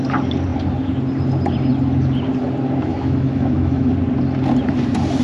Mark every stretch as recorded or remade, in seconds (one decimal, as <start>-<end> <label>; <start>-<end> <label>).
0.0-2.9 recorded; 2.9-3.9 remade; 3.9-5.2 recorded